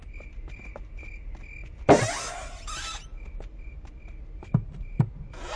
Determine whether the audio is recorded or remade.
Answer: recorded